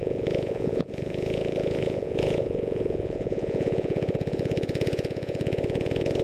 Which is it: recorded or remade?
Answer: remade